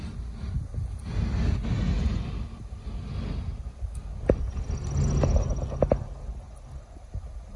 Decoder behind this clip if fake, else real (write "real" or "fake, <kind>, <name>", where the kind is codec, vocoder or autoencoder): real